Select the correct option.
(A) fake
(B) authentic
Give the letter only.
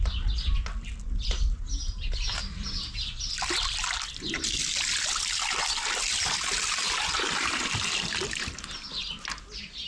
B